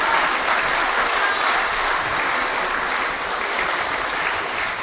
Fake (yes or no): no